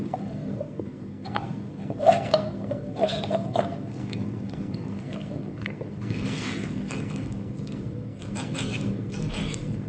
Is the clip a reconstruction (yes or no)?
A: yes